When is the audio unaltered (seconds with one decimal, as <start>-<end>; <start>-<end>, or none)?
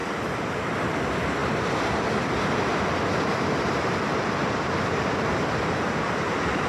0.0-6.7